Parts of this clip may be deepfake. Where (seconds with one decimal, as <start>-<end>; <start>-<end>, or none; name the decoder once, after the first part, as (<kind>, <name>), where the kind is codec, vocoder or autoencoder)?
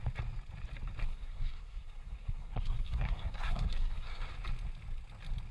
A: 1.0-4.3 (codec, SNAC)